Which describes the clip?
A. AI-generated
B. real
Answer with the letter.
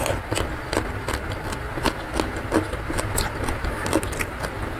B